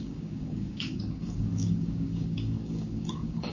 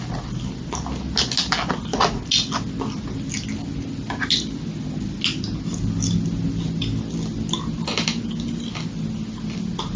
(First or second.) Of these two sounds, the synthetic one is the first